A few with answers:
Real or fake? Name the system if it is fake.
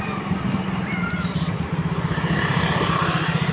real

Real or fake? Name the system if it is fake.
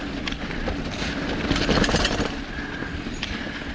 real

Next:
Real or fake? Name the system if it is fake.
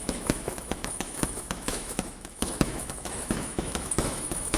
fake, autoencoder, DAC-VAE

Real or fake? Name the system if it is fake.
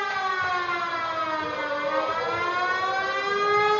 real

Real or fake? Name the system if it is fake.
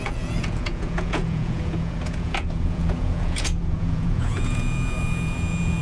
fake, vocoder, Vocos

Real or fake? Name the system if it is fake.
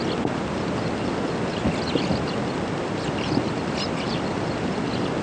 real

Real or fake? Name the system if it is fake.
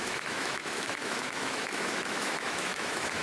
fake, autoencoder, DAC-VAE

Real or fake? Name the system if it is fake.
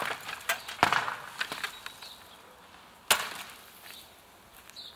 real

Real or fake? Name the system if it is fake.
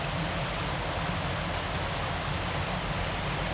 real